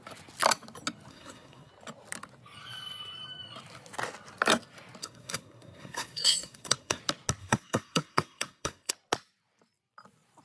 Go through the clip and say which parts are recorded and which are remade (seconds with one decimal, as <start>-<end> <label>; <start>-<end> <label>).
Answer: 0.0-1.1 recorded; 1.1-1.7 remade; 1.7-5.0 recorded; 5.0-7.0 remade; 7.0-7.4 recorded; 7.4-8.9 remade; 8.9-10.4 recorded